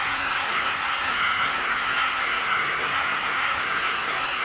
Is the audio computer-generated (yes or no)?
yes